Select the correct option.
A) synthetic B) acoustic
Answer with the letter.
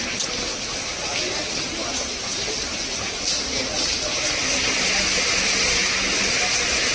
B